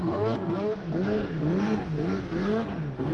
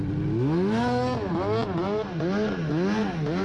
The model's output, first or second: first